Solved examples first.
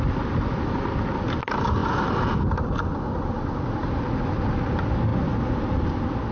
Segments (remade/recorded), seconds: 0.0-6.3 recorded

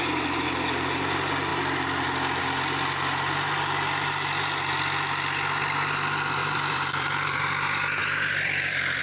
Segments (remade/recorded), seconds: 0.0-6.4 recorded; 6.4-7.4 remade; 7.4-8.0 recorded; 8.0-9.0 remade